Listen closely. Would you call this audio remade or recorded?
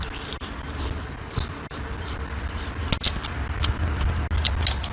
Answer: recorded